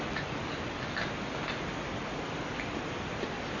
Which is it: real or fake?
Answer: real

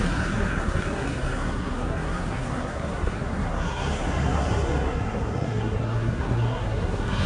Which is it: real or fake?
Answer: fake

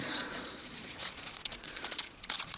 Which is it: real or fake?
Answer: fake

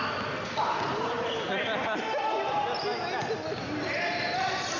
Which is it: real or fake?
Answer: real